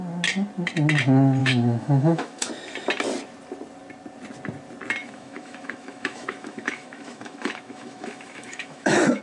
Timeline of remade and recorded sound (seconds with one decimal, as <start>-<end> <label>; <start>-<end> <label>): 0.0-1.4 recorded; 1.4-2.5 remade; 2.5-5.0 recorded; 5.0-9.2 remade

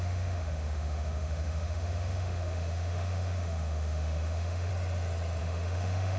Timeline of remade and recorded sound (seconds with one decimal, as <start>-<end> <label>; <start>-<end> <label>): 0.0-4.7 remade; 4.7-5.4 recorded; 5.4-6.2 remade

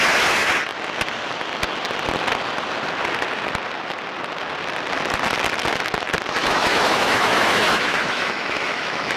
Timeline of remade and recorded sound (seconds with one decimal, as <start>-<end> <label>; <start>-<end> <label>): 0.0-6.4 recorded; 6.4-9.2 remade

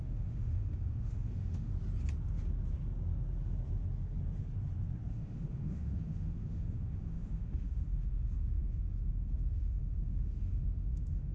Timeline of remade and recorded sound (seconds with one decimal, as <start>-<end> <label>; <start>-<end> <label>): 0.0-1.7 remade; 1.7-5.1 recorded; 5.1-11.3 remade